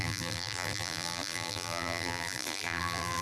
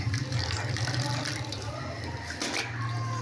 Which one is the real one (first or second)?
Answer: second